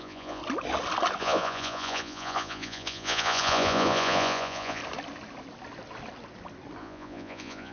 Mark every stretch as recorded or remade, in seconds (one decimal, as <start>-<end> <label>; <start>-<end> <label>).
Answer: 0.0-0.4 remade; 0.4-1.2 recorded; 1.2-4.8 remade; 4.8-6.8 recorded; 6.8-7.7 remade